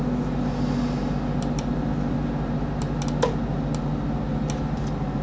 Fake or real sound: real